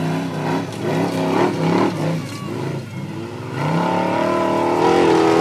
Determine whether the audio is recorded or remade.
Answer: recorded